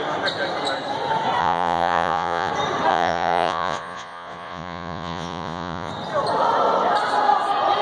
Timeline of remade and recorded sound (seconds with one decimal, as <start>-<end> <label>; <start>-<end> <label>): 0.0-1.4 recorded; 1.4-2.5 remade; 2.5-2.9 recorded; 2.9-5.9 remade; 5.9-7.8 recorded